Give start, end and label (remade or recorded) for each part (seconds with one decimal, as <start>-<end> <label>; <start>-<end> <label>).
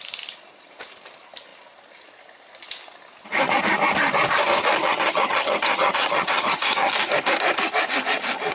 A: 0.0-4.8 recorded; 4.8-6.9 remade; 6.9-8.5 recorded